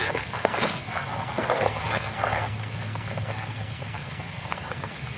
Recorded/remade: remade